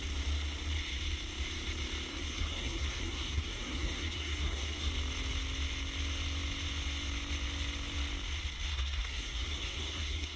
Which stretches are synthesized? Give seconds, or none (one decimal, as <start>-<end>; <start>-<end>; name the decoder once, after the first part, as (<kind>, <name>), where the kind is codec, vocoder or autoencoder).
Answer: 2.1-4.9 (codec, SNAC); 8.7-10.4